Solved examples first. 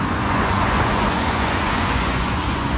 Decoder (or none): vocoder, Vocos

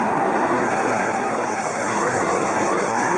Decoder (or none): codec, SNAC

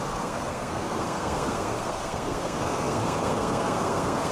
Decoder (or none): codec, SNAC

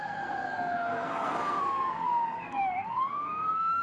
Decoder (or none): codec, SNAC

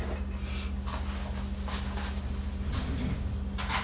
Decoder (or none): none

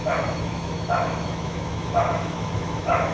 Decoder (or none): autoencoder, DAC-VAE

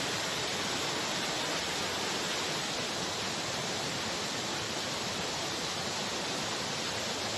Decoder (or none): none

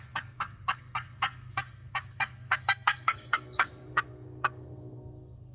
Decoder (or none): codec, SNAC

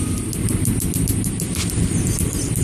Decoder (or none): none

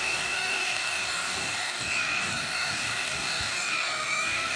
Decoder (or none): codec, DAC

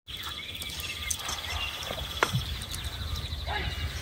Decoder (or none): none